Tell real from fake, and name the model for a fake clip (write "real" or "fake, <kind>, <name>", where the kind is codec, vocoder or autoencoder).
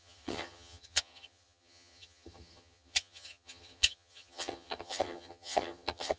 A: fake, vocoder, HiFi-GAN